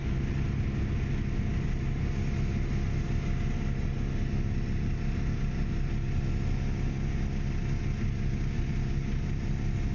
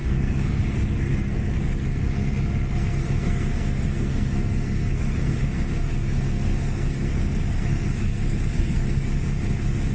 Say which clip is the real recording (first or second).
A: first